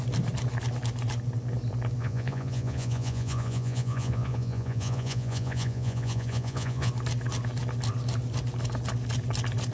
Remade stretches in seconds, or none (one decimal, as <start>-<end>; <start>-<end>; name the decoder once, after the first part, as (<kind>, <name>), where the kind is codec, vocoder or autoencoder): 2.0-6.9 (vocoder, Vocos)